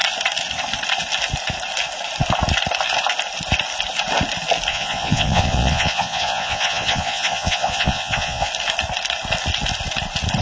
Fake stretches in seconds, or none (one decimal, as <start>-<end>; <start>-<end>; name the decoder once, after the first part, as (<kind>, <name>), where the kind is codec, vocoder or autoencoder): 4.7-8.5 (vocoder, Vocos)